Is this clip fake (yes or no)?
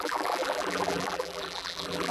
yes